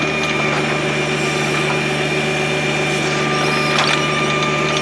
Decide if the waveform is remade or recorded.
recorded